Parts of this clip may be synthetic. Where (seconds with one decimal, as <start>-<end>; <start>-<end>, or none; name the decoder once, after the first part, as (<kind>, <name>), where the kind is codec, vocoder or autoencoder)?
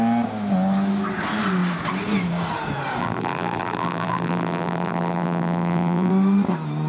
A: 3.0-6.1 (vocoder, BigVGAN v2)